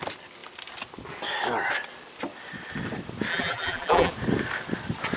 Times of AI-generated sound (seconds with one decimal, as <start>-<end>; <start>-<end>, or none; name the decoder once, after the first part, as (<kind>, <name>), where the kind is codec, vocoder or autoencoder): 3.3-4.1 (vocoder, BigVGAN v2)